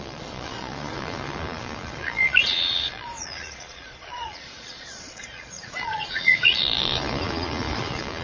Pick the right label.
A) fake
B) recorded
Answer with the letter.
A